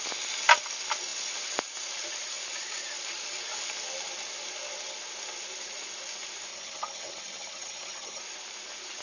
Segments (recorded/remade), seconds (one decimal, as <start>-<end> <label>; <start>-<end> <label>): 0.0-6.5 recorded; 6.5-8.2 remade; 8.2-9.0 recorded

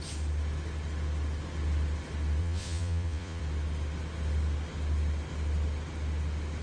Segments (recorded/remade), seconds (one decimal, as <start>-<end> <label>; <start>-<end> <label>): 0.0-2.4 recorded; 2.4-3.4 remade; 3.4-6.6 recorded

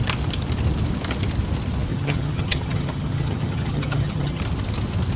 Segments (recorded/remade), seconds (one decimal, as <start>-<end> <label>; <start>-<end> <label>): 0.0-1.9 recorded; 1.9-4.4 remade; 4.4-5.2 recorded

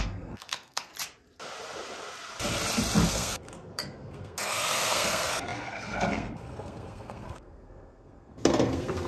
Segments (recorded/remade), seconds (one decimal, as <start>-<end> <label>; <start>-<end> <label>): 0.0-0.9 remade; 0.9-3.1 recorded; 3.1-9.1 remade

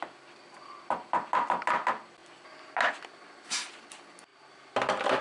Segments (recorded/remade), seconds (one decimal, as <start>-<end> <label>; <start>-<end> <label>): 0.0-5.2 recorded

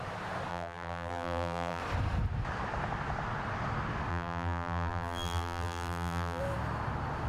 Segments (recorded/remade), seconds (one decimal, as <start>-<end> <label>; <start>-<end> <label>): 0.0-0.5 recorded; 0.5-1.8 remade; 1.8-4.1 recorded; 4.1-6.4 remade; 6.4-7.3 recorded

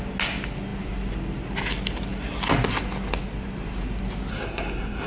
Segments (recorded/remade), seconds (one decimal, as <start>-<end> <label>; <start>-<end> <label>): 0.0-4.3 recorded; 4.3-5.1 remade

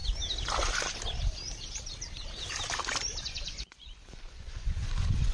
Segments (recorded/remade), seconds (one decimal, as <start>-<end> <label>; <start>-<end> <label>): 0.0-3.2 recorded; 3.2-5.3 remade